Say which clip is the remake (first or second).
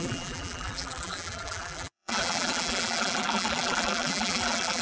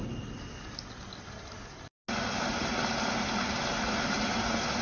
first